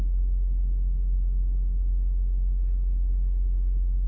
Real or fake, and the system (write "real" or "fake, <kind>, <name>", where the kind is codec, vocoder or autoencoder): real